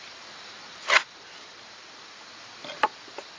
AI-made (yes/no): no